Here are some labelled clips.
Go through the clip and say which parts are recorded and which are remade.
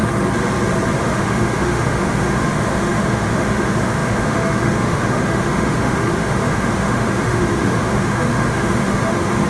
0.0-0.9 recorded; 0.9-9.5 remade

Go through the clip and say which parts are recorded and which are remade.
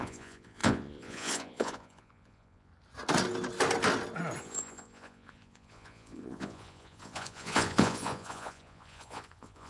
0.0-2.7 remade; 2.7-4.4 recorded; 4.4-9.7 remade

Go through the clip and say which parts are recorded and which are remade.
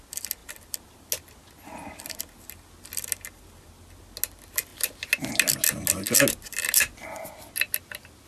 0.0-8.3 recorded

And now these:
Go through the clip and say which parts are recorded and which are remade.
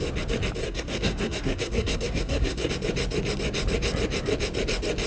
0.0-0.6 recorded; 0.6-2.7 remade; 2.7-5.1 recorded